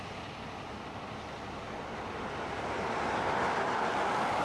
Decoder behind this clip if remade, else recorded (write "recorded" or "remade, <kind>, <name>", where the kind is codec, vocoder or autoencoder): recorded